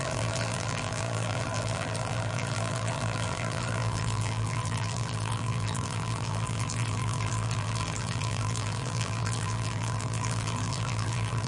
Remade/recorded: remade